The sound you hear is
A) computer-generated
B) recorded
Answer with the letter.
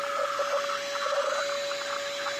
B